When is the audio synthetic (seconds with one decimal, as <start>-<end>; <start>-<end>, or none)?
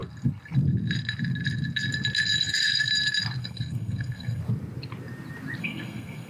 2.4-2.9; 3.4-4.4; 5.6-6.3